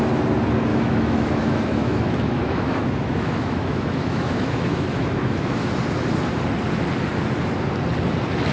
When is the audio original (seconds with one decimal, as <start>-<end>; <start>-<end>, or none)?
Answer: 0.0-0.7; 5.7-8.5